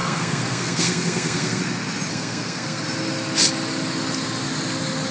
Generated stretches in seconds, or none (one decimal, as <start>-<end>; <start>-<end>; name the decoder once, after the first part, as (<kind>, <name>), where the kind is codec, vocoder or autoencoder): 0.0-1.6 (codec, SNAC); 2.1-2.8